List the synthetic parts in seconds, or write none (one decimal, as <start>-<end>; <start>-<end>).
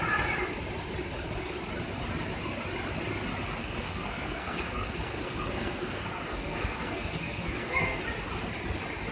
3.6-8.0